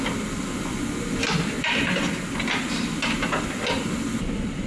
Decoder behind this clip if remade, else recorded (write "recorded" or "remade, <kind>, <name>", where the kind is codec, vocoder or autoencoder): remade, vocoder, BigVGAN v2